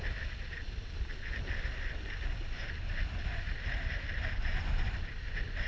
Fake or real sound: real